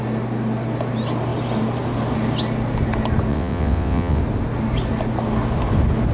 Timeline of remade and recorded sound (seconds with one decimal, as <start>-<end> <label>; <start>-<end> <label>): 0.0-3.3 recorded; 3.3-4.2 remade; 4.2-6.1 recorded